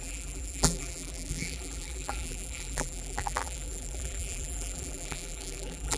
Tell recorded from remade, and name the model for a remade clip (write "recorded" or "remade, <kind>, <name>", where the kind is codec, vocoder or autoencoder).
remade, vocoder, BigVGAN v2